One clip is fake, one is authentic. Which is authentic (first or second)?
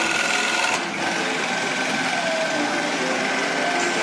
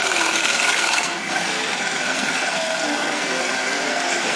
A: first